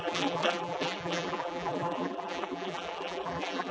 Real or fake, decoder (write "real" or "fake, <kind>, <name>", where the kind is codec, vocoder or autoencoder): fake, vocoder, BigVGAN v2